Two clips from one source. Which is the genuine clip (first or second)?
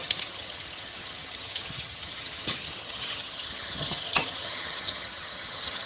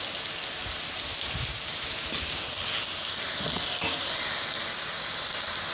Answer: second